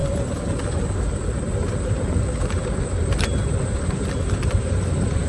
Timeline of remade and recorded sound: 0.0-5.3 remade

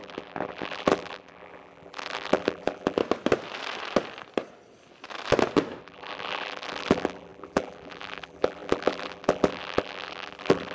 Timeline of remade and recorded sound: 0.0-3.0 remade; 3.0-5.8 recorded; 5.8-10.7 remade

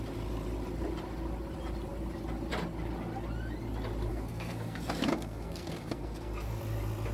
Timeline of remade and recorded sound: 0.0-4.1 recorded; 4.1-6.6 remade; 6.6-7.1 recorded

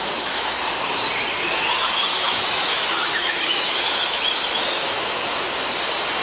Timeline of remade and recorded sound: 0.0-0.5 remade; 0.5-2.1 recorded; 2.1-5.4 remade; 5.4-6.2 recorded

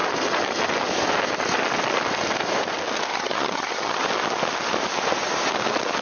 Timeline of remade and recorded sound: 0.0-3.1 recorded; 3.1-4.0 remade; 4.0-6.0 recorded

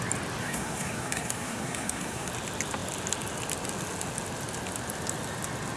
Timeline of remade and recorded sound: 0.0-0.4 recorded; 0.4-2.3 remade; 2.3-5.8 recorded